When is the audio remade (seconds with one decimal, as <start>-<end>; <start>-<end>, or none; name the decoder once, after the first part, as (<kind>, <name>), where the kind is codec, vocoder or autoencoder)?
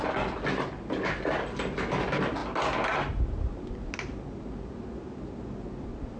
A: none